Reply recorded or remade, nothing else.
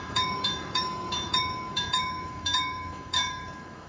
remade